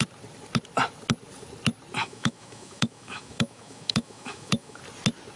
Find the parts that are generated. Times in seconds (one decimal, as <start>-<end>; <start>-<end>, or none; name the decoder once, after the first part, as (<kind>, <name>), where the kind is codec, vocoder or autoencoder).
2.0-4.8 (autoencoder, DAC-VAE)